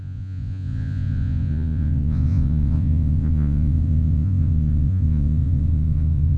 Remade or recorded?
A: remade